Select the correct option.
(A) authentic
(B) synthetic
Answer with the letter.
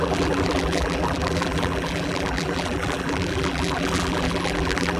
B